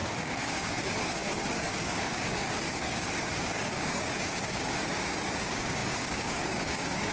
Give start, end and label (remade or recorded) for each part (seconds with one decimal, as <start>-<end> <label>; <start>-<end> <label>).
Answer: 0.0-7.1 remade

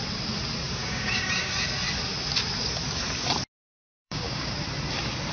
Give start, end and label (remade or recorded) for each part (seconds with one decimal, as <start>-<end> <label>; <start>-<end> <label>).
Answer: 0.0-0.8 recorded; 0.8-1.5 remade; 1.5-3.8 recorded; 3.8-4.5 remade; 4.5-5.3 recorded

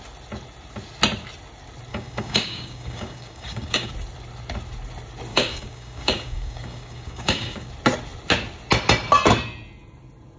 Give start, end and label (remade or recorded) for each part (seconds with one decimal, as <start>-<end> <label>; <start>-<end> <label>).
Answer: 0.0-1.9 recorded; 1.9-3.9 remade; 3.9-5.3 recorded; 5.3-7.7 remade; 7.7-10.4 recorded

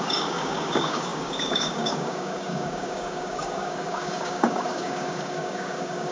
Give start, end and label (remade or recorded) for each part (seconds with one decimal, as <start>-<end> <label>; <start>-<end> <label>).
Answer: 0.0-6.1 remade